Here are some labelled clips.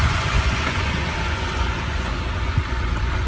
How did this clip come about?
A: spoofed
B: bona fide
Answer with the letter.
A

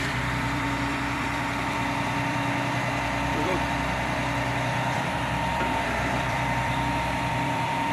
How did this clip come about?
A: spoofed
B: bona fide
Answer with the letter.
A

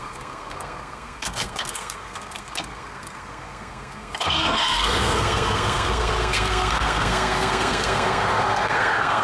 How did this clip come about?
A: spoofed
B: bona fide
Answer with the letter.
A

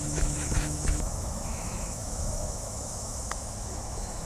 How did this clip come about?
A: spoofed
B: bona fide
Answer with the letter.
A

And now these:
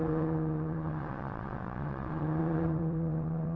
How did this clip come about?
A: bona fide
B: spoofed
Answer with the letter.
B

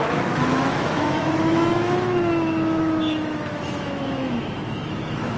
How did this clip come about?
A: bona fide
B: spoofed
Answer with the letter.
B